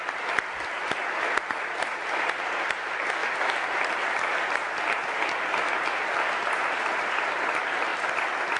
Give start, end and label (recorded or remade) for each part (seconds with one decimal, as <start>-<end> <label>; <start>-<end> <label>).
0.0-8.6 recorded